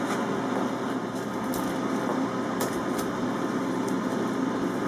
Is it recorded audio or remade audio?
recorded